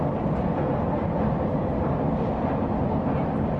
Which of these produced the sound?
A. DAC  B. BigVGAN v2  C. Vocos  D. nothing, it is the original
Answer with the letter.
D